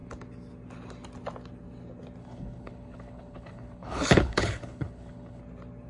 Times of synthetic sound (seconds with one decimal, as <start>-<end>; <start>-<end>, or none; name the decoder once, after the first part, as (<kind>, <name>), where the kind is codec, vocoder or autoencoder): 2.2-5.4 (codec, HILCodec)